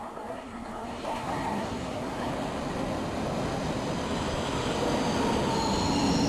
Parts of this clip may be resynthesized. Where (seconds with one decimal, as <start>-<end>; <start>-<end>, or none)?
0.0-2.3